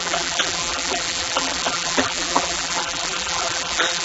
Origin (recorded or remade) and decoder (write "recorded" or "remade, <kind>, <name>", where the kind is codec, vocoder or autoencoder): remade, vocoder, BigVGAN v2